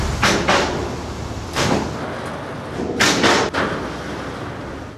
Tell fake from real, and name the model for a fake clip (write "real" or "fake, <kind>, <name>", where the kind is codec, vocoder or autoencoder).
real